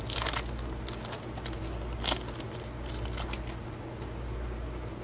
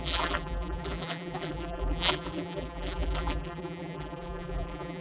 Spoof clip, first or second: second